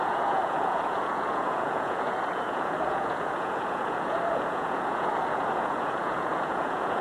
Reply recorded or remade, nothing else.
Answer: remade